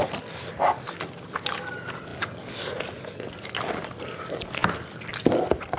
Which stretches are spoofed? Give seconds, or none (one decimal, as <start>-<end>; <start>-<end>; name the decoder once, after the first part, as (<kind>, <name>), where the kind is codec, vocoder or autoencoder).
none